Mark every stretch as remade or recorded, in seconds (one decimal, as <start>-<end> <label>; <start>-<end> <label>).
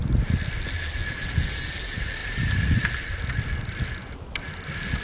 0.0-5.0 recorded